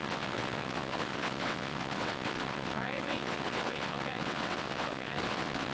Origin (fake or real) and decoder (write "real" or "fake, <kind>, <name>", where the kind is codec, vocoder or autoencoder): fake, vocoder, WaveNeXt